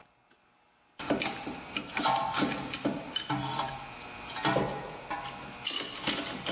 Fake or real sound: real